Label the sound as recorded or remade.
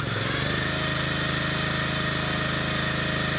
recorded